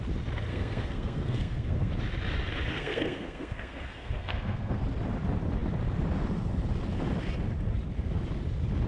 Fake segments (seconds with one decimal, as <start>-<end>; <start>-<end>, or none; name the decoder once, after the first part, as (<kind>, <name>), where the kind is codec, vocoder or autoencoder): 0.5-1.9 (codec, SNAC); 2.7-4.8